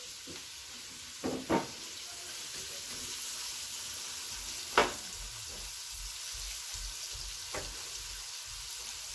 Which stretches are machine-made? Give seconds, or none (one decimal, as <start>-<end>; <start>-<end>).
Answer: none